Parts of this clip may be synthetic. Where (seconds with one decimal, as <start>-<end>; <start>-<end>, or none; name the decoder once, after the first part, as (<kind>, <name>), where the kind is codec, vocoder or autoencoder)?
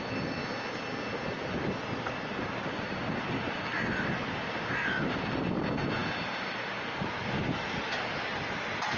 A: none